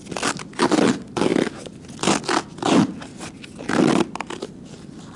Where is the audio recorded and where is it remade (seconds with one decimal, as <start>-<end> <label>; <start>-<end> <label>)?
0.0-5.2 recorded